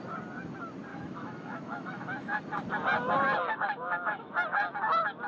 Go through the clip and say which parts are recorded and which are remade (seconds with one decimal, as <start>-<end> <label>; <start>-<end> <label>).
0.0-0.9 recorded; 0.9-2.4 remade; 2.4-3.5 recorded; 3.5-4.3 remade; 4.3-5.3 recorded